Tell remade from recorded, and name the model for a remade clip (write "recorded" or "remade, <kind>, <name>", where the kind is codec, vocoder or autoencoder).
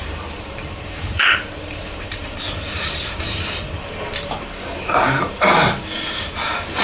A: remade, vocoder, BigVGAN v2